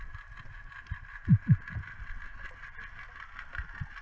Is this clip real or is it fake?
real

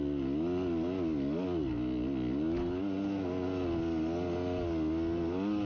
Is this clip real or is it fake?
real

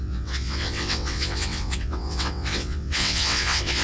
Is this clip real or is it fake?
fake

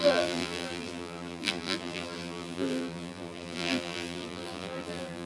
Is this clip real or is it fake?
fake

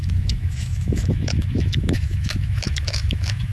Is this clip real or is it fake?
fake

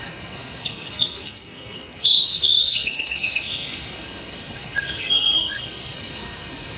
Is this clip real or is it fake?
fake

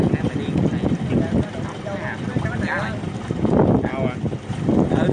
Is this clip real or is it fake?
real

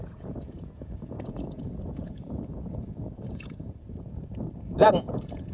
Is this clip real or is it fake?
fake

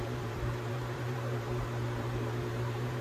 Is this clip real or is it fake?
fake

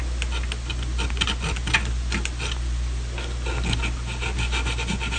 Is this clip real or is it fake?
real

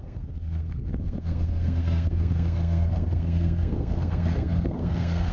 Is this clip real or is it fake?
fake